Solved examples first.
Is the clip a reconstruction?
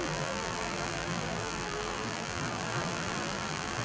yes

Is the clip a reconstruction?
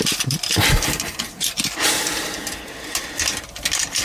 no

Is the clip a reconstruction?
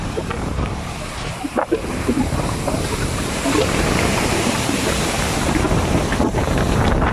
yes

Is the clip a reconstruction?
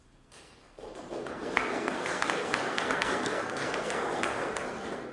yes